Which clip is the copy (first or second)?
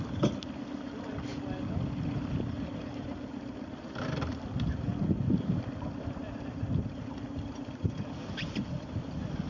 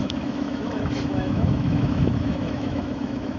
second